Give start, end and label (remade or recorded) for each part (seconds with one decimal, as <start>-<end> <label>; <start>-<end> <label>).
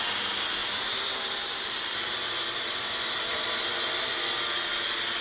0.0-0.6 recorded; 0.6-3.7 remade; 3.7-5.2 recorded